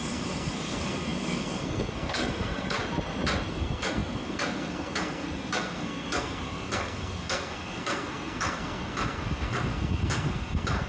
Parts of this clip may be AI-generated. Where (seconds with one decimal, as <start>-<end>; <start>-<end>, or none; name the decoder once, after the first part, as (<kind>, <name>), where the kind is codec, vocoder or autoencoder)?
0.0-2.8 (codec, SNAC); 3.5-10.9